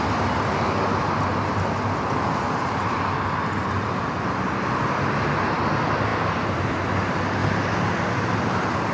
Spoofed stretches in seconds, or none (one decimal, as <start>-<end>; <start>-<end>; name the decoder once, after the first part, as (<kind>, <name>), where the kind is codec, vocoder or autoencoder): none